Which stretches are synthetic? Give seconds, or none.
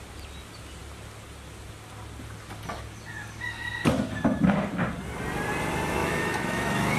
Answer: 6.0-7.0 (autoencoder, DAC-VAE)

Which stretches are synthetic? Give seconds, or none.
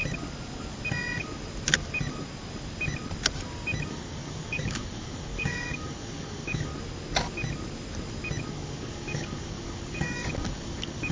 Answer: 3.9-6.7 (codec, DAC); 8.5-11.1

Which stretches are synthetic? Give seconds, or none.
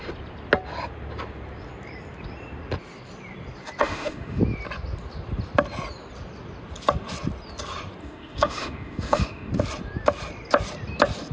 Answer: 3.8-4.4 (autoencoder, DAC-VAE); 8.0-9.5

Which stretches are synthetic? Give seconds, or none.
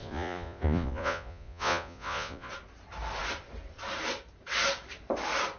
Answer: 0.0-2.5 (vocoder, Vocos)